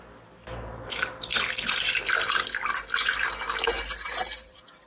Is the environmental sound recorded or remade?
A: recorded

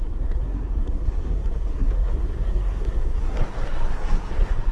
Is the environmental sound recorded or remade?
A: remade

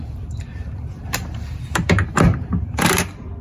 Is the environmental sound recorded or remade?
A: remade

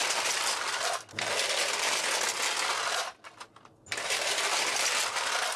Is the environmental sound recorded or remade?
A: recorded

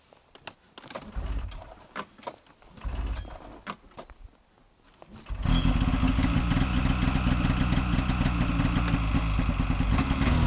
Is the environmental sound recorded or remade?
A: recorded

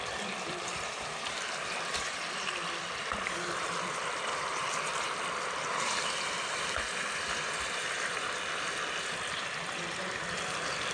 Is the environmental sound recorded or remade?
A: remade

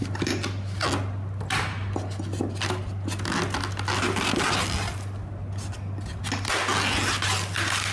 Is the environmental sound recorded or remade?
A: recorded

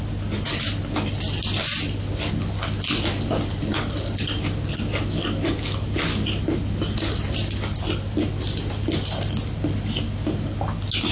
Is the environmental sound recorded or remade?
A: recorded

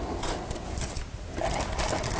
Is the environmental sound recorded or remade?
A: recorded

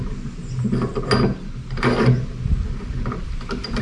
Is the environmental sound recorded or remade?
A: recorded